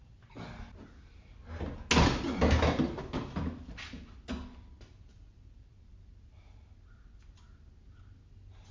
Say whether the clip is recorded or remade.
recorded